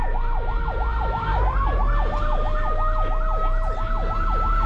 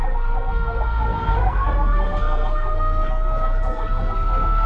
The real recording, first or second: first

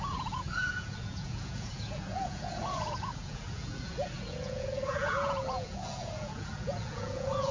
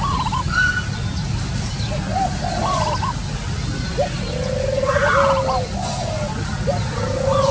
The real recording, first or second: second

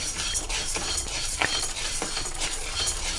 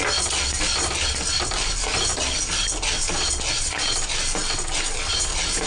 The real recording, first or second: second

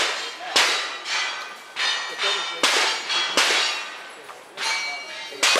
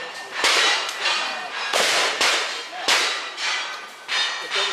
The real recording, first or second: first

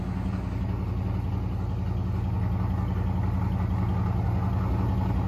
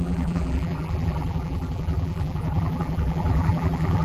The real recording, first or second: first